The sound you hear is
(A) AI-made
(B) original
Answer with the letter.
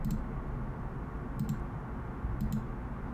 B